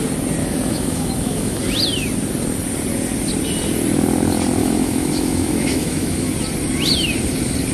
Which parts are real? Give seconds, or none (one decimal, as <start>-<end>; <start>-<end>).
0.0-0.4; 1.6-4.6; 6.3-7.7